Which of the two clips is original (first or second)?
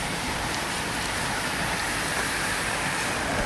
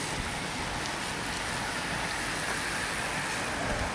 second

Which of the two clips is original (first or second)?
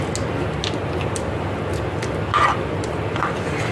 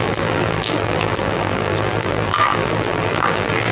first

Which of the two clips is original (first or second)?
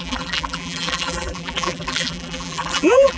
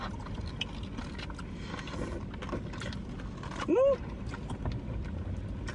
second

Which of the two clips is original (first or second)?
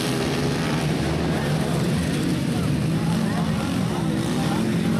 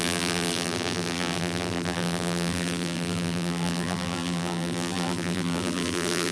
first